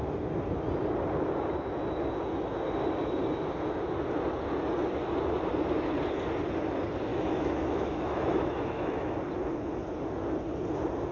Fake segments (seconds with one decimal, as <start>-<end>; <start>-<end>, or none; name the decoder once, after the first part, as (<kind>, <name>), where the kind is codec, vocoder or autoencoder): 7.1-9.1 (autoencoder, DAC-VAE)